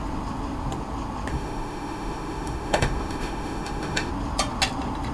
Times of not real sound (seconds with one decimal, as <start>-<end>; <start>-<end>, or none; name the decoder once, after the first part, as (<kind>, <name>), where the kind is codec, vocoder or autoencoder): 1.3-4.1 (autoencoder, DAC-VAE)